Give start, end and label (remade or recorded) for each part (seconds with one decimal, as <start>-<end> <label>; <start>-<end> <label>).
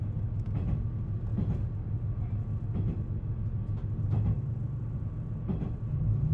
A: 0.0-6.3 recorded